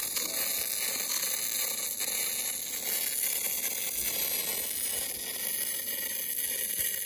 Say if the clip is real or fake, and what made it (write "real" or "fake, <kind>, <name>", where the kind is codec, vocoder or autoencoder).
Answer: real